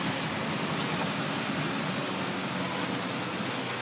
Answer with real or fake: real